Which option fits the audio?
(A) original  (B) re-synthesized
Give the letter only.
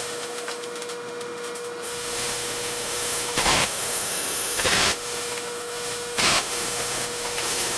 B